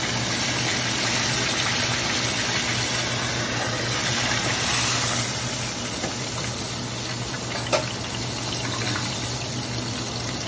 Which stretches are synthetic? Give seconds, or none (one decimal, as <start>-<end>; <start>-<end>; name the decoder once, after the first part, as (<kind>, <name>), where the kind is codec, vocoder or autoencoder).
none